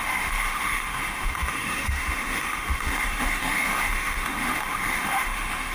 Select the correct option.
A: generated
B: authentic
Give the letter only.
A